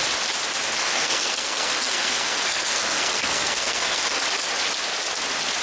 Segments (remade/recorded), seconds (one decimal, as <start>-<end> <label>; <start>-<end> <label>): 0.0-0.8 recorded; 0.8-4.2 remade; 4.2-5.6 recorded